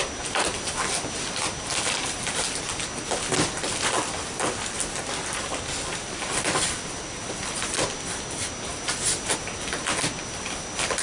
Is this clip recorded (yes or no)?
yes